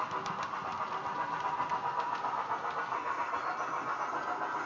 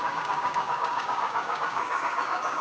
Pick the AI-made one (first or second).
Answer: second